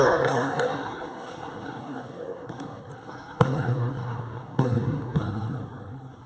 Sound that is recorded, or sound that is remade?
remade